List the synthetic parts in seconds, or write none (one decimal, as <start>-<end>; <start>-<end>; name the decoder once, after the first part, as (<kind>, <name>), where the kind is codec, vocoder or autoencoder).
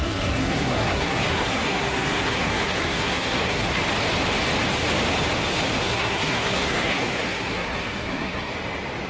0.0-3.8 (codec, SNAC); 5.8-8.5